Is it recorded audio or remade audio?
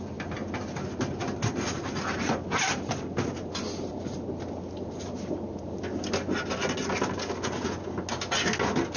recorded